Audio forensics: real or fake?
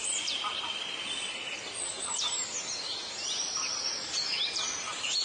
real